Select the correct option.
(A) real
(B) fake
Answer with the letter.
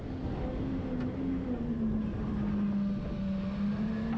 A